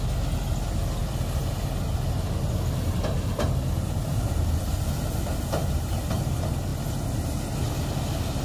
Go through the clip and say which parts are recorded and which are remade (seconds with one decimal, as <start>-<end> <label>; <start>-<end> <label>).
0.0-1.0 recorded; 1.0-6.0 remade; 6.0-8.4 recorded